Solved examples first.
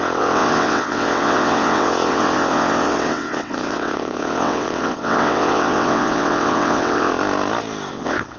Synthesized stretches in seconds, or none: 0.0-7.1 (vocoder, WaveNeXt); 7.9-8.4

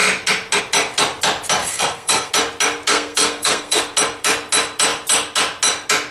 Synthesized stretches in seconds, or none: 1.6-2.3 (codec, SNAC); 2.9-3.8

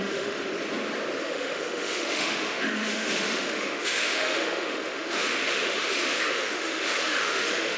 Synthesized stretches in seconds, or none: 0.0-0.5 (autoencoder, DAC-VAE); 1.2-7.8

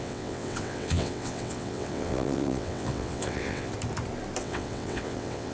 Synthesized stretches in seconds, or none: 0.0-3.7 (vocoder, WaveNeXt); 4.4-5.5

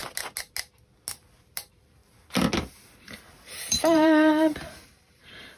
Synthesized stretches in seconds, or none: 1.6-2.0 (vocoder, BigVGAN v2); 3.6-5.6